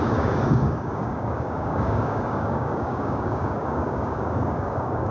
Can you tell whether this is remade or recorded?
remade